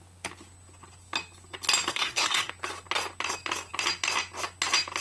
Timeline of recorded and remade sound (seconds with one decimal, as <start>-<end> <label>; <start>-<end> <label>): 0.0-1.9 recorded; 1.9-2.5 remade; 2.5-5.0 recorded